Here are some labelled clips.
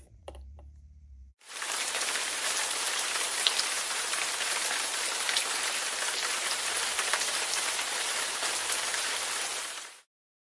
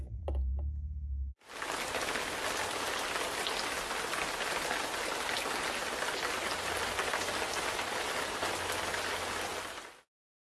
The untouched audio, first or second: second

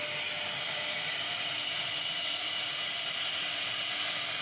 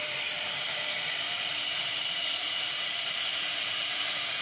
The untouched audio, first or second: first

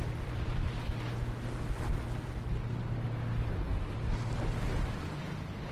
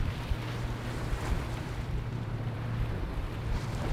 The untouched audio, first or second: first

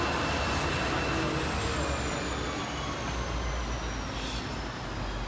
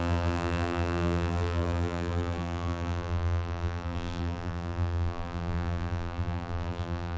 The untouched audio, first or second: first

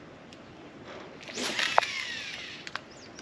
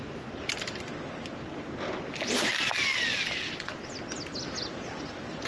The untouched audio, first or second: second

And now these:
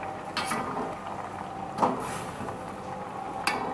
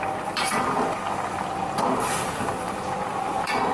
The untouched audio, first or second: first